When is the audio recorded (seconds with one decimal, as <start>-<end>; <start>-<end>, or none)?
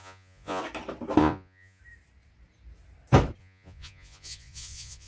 0.6-1.2; 1.8-3.4